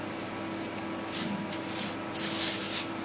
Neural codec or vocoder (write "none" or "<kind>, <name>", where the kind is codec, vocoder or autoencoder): none